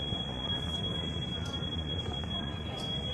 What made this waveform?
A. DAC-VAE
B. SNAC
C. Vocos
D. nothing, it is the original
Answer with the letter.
C